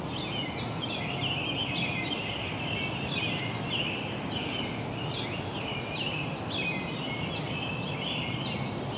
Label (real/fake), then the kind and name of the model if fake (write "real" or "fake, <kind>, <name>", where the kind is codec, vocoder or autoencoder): real